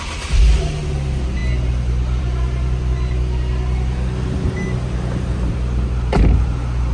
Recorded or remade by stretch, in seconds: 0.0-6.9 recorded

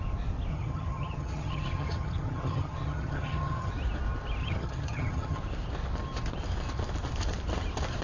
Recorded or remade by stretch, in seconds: 0.0-0.5 recorded; 0.5-3.7 remade; 3.7-4.4 recorded; 4.4-5.4 remade; 5.4-8.0 recorded